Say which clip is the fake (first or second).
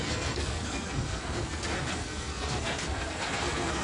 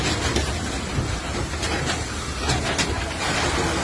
first